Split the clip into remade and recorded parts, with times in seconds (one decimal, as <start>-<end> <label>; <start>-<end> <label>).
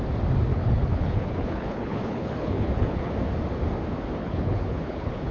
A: 0.0-0.5 recorded; 0.5-3.1 remade; 3.1-4.2 recorded; 4.2-5.3 remade